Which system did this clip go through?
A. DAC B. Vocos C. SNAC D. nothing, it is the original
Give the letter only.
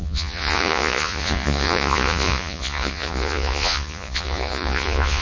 B